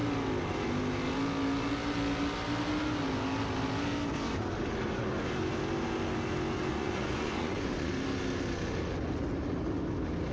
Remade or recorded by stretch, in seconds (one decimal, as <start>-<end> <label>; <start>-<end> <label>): 0.0-6.7 recorded; 6.7-7.9 remade; 7.9-10.3 recorded